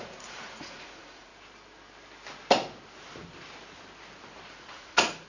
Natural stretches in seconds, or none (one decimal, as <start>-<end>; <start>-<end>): 1.3-4.5